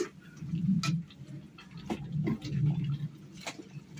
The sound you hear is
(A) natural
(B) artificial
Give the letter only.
A